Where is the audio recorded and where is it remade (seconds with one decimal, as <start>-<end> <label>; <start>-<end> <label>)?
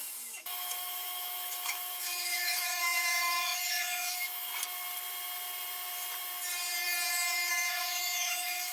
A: 0.0-4.5 remade; 4.5-7.5 recorded; 7.5-8.7 remade